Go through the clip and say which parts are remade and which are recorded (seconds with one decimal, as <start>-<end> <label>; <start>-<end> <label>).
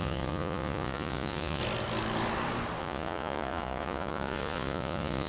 0.0-1.6 remade; 1.6-2.8 recorded; 2.8-5.3 remade